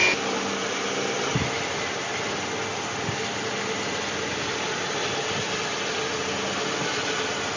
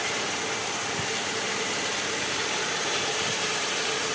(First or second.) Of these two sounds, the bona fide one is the first